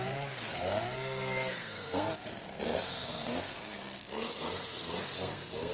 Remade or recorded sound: remade